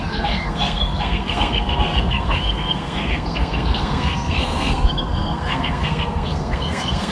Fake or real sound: fake